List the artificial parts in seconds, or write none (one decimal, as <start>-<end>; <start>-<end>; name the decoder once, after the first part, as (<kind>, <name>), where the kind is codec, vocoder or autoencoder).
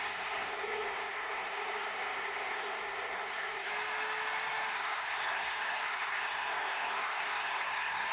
0.0-3.7 (codec, SNAC); 4.7-8.1